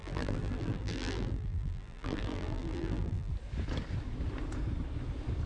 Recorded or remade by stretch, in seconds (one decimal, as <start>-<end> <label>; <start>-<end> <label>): 0.0-3.3 remade; 3.3-5.5 recorded